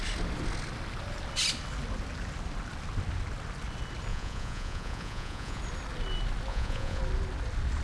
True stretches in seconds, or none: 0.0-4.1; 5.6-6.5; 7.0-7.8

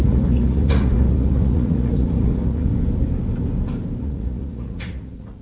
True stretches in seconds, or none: 2.7-4.0